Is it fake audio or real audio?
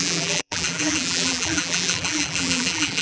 fake